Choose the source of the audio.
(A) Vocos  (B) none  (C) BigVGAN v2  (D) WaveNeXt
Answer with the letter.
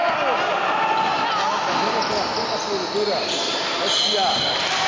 B